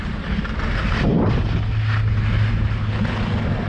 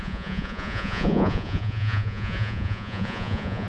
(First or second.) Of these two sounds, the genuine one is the first